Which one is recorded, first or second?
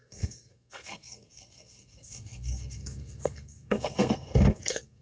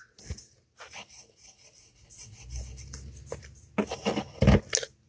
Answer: second